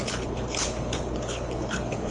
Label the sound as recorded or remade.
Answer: remade